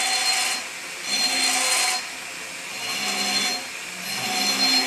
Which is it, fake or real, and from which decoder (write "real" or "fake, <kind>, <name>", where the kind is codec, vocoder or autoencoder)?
real